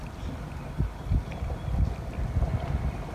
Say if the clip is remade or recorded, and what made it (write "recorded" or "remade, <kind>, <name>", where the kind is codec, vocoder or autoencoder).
recorded